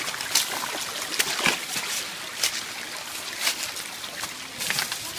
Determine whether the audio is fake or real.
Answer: real